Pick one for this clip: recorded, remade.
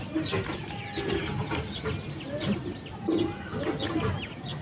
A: recorded